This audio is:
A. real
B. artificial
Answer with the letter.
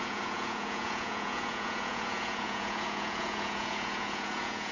B